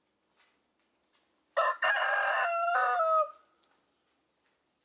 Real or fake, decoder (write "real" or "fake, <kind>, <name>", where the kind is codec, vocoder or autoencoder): real